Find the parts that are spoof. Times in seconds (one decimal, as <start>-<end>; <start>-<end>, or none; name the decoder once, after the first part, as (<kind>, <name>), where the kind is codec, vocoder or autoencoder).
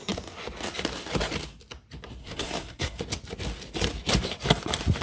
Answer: 2.2-3.0 (codec, SNAC)